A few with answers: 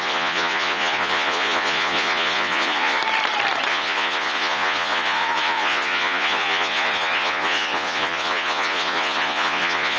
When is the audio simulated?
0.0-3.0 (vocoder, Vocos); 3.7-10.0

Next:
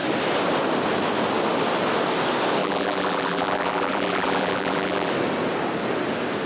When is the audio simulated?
2.6-5.1 (vocoder, BigVGAN v2)

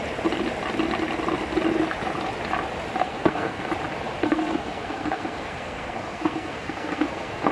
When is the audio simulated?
3.0-3.7 (codec, SNAC); 4.2-7.5

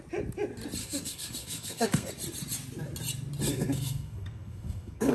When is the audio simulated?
0.8-2.1 (codec, SNAC); 3.5-5.1

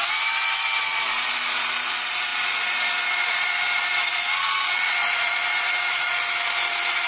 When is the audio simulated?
0.0-7.1 (vocoder, Vocos)

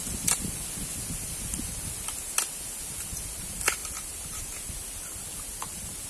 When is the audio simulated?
none

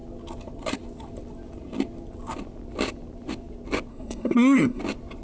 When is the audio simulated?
3.9-4.8 (codec, SNAC)

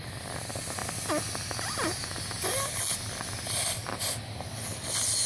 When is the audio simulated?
none